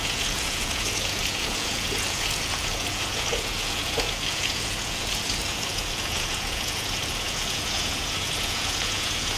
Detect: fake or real fake